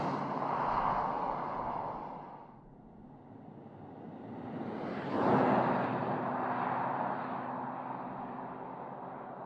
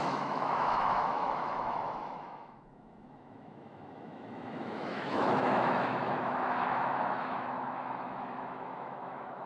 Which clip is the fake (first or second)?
second